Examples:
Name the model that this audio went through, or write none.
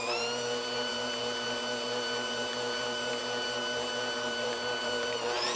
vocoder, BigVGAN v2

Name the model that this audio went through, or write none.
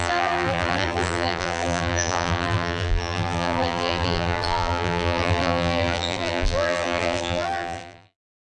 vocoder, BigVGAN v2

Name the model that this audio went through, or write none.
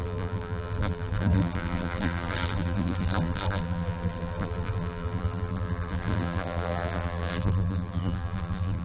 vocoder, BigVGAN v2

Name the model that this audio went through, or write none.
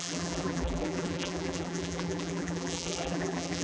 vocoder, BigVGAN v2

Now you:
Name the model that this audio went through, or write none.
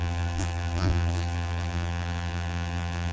vocoder, BigVGAN v2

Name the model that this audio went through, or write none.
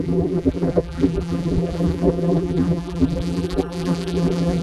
vocoder, BigVGAN v2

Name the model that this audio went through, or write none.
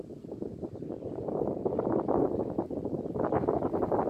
none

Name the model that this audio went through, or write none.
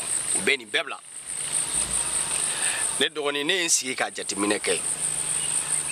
none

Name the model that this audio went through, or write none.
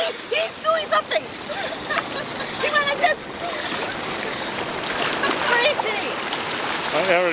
none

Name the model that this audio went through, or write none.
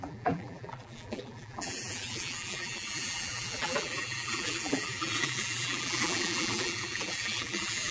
vocoder, BigVGAN v2